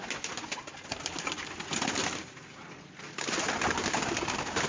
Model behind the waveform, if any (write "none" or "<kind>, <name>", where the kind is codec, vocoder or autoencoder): none